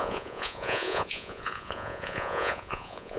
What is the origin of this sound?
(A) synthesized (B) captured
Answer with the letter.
A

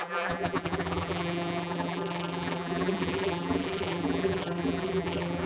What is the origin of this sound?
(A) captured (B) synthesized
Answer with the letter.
B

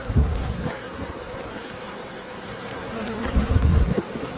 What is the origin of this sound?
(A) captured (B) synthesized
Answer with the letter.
B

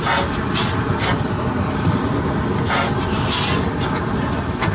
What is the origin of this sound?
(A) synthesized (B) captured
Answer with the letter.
B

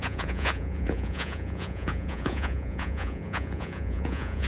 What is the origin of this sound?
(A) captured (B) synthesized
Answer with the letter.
B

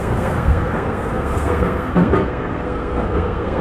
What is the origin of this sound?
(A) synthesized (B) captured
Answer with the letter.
A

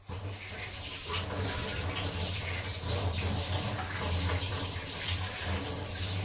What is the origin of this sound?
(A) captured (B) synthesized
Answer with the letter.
A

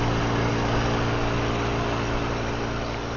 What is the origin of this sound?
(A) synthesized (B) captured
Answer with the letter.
B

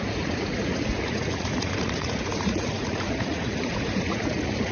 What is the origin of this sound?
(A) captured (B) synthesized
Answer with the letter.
B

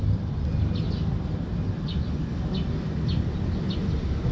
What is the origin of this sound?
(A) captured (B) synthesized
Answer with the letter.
A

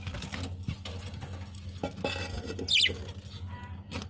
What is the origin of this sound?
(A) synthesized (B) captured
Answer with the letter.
B